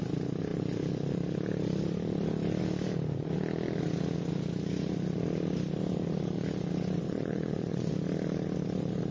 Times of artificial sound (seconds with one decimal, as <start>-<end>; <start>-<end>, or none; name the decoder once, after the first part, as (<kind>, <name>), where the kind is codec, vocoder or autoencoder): 7.0-7.9 (vocoder, Vocos)